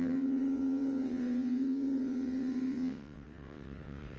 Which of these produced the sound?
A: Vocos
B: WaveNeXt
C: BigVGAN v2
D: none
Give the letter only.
B